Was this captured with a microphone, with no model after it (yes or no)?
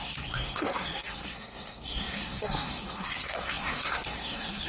no